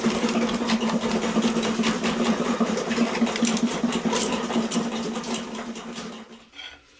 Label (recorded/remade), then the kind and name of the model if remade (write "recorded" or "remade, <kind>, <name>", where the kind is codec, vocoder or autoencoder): recorded